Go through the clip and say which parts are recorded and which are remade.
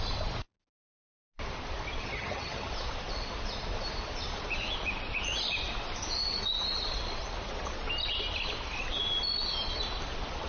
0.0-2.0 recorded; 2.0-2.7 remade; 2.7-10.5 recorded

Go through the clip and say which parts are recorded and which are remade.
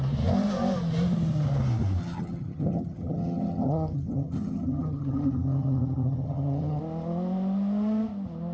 0.0-2.0 recorded; 2.0-6.8 remade; 6.8-8.5 recorded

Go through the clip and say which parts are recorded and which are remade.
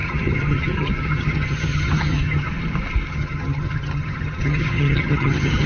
0.0-2.5 remade; 2.5-3.1 recorded; 3.1-5.7 remade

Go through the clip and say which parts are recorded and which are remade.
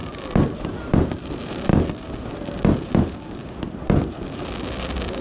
0.0-5.2 recorded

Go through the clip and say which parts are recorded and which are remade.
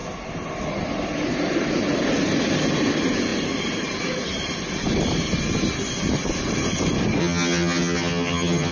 0.0-7.2 recorded; 7.2-8.7 remade